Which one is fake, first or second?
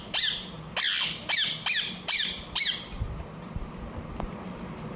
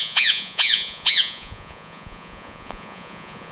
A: second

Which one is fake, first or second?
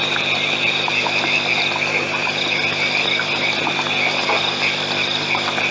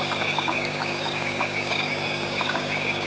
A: second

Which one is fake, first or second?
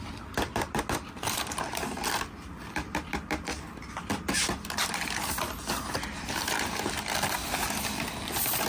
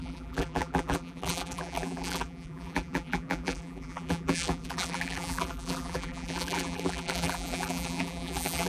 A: second